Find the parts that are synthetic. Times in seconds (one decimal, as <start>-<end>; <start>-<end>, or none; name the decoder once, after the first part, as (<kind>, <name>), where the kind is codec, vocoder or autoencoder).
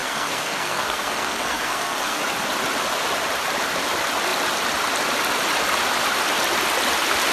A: 0.0-2.2 (codec, SNAC)